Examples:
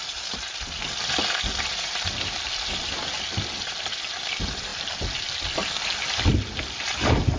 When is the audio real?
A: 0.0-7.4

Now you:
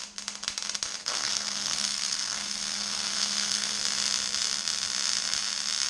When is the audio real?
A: 0.0-1.0; 3.8-5.9

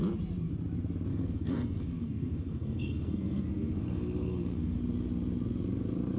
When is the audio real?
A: 0.0-1.1; 4.8-6.2

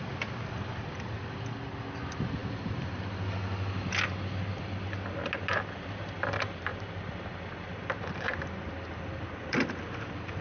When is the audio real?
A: 2.4-3.0; 6.7-9.5

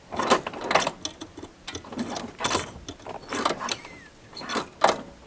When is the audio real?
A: 0.0-5.3